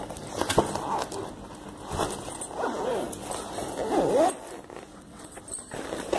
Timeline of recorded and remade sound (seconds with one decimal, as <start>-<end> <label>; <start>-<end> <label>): 0.0-4.9 recorded; 4.9-5.4 remade; 5.4-6.2 recorded